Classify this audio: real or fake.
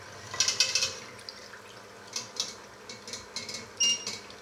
real